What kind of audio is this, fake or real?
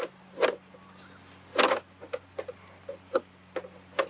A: real